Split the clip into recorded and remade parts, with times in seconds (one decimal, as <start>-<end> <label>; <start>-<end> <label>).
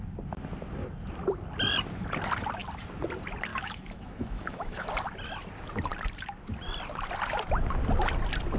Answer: 0.0-3.5 recorded; 3.5-4.9 remade; 4.9-8.6 recorded